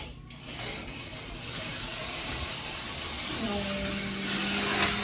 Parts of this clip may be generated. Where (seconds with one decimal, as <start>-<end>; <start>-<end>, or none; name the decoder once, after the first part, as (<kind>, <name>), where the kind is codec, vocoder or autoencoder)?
1.1-3.4 (vocoder, BigVGAN v2)